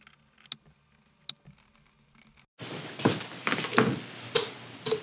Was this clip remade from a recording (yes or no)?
no